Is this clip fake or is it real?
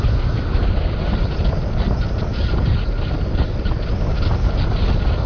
real